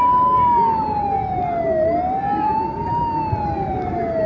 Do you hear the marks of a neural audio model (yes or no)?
no